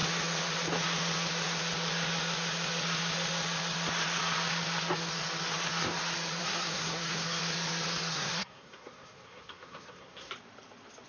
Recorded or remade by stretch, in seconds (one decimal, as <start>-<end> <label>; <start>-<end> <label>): 0.0-6.4 recorded; 6.4-7.4 remade; 7.4-8.1 recorded; 8.1-10.3 remade; 10.3-11.1 recorded